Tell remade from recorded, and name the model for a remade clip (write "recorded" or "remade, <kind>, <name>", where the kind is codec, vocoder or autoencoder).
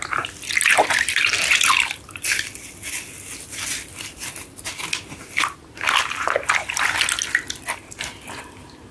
recorded